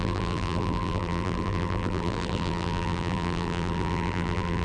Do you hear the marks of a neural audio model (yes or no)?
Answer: yes